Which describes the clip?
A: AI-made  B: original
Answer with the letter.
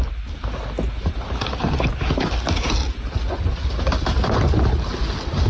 B